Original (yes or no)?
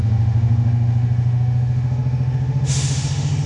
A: no